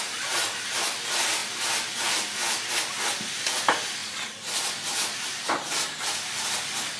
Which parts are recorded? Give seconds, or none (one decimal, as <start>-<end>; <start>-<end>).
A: 0.0-7.0